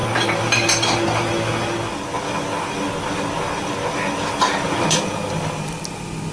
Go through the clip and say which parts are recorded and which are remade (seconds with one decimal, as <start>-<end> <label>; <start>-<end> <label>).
0.0-6.3 recorded